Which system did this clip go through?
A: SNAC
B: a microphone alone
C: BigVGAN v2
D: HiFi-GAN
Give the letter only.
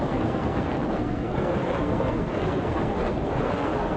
A